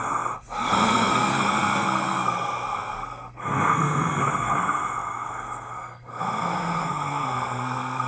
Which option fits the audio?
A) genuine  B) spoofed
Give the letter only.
B